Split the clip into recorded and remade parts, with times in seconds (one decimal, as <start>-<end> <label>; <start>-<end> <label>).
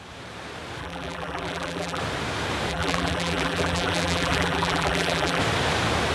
0.0-0.8 recorded; 0.8-2.0 remade; 2.0-2.7 recorded; 2.7-5.4 remade; 5.4-6.1 recorded